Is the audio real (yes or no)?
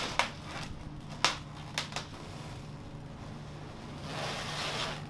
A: yes